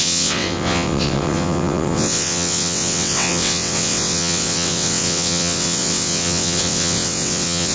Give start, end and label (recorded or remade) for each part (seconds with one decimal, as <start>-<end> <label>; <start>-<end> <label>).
0.0-7.7 remade